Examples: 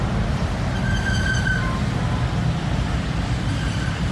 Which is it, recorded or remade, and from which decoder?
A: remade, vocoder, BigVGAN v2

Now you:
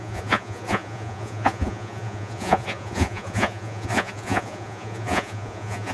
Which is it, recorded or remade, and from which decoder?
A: remade, vocoder, Vocos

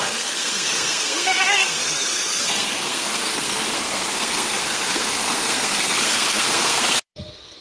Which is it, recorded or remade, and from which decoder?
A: remade, codec, SNAC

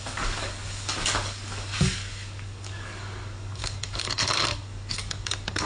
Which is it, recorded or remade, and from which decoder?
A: remade, codec, DAC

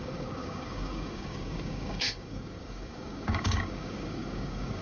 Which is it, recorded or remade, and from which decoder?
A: remade, codec, DAC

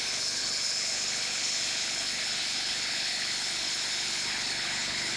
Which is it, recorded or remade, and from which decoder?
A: remade, codec, HILCodec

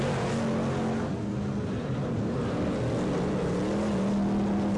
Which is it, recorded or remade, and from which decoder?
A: recorded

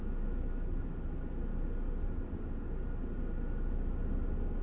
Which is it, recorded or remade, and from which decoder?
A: recorded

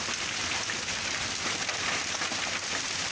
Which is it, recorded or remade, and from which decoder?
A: recorded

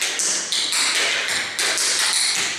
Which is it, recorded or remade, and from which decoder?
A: recorded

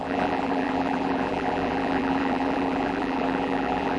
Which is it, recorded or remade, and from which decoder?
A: remade, vocoder, BigVGAN v2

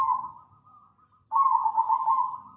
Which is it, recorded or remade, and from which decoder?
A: recorded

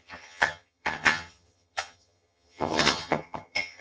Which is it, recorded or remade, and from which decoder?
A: remade, vocoder, HiFi-GAN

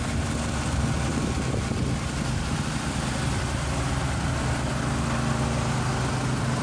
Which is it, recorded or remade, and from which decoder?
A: recorded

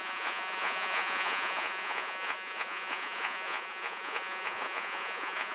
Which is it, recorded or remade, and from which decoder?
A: remade, vocoder, Vocos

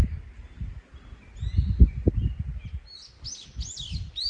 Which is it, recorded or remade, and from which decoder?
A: recorded